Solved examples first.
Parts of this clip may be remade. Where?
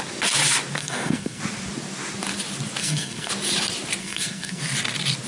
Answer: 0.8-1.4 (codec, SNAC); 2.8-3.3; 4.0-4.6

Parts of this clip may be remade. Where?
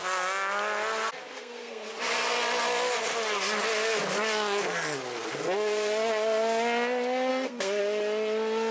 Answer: 1.4-1.9 (codec, SNAC); 7.3-7.8